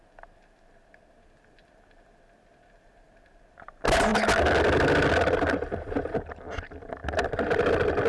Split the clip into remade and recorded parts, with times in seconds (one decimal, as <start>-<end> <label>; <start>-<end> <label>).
0.0-8.1 recorded